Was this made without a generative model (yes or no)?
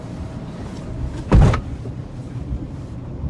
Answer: no